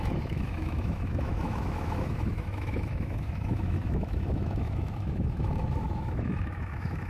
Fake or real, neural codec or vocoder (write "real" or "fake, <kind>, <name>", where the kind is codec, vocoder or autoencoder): fake, autoencoder, DAC-VAE